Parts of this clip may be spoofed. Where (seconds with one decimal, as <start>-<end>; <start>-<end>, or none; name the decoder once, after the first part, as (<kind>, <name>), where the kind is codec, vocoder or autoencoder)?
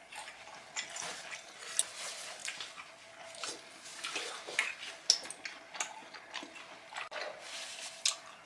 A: none